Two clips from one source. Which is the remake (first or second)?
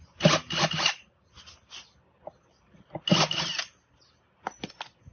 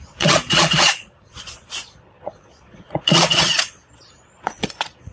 second